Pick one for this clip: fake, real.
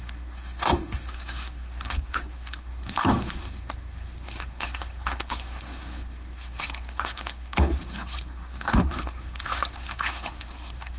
fake